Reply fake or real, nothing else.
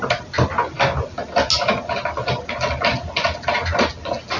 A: real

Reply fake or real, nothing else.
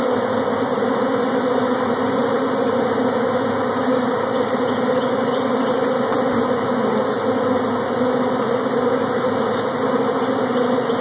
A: real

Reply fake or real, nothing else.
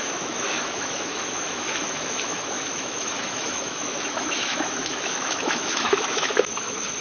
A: fake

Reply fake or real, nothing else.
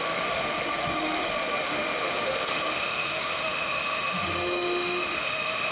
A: fake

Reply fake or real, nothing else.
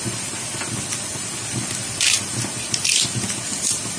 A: real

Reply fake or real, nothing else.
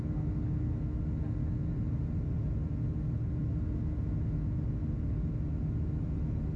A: real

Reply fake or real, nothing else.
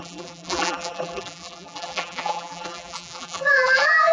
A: fake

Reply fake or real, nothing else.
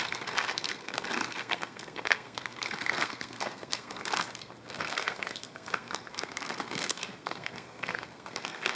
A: fake